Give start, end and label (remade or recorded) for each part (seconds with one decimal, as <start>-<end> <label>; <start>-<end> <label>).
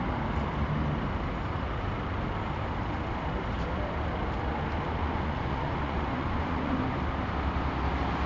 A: 0.0-5.0 recorded; 5.0-7.0 remade; 7.0-8.3 recorded